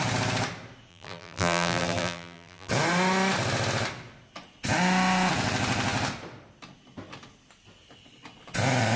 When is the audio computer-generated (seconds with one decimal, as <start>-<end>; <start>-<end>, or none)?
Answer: 0.9-2.7